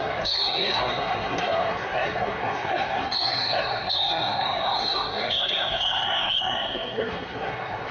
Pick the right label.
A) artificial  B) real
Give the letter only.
A